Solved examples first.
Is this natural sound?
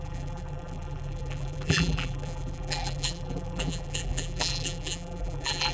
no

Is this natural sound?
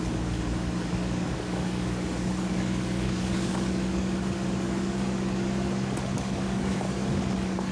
no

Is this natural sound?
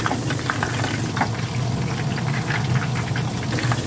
yes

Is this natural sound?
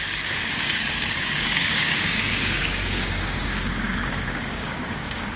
no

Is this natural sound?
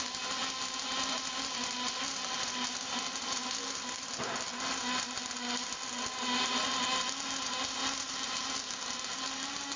yes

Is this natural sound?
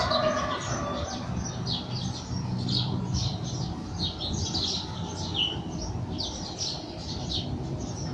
yes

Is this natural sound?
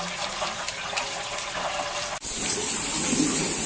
yes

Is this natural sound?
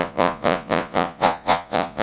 no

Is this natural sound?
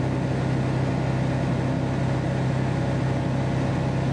yes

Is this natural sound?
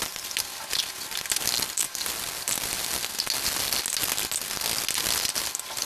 yes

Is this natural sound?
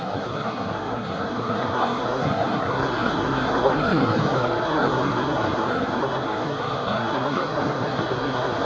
no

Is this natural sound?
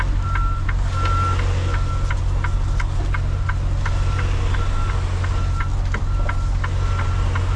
yes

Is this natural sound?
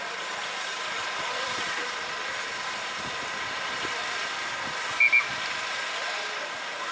yes